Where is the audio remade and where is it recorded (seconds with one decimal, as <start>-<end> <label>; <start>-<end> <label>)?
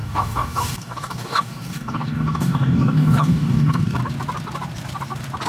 0.0-4.0 remade; 4.0-5.5 recorded